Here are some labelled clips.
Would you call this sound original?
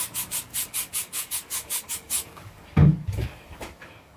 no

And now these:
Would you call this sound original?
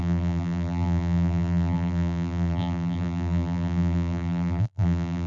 no